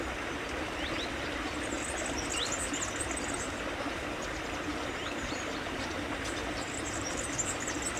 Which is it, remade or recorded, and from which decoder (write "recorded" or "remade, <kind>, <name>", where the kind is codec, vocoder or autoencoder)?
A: recorded